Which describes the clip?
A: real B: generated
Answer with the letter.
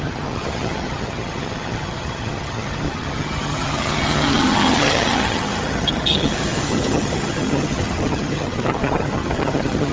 B